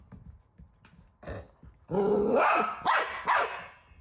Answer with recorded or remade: recorded